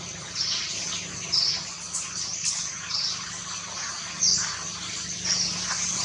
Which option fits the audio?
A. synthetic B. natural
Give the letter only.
B